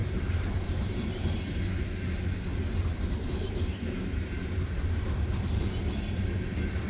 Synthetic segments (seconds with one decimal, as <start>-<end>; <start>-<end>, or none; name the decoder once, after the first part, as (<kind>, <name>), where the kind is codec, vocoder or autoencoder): 0.0-1.6 (vocoder, BigVGAN v2); 2.9-5.7